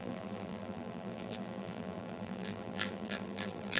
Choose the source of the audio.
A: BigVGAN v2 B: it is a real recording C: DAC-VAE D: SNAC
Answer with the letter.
A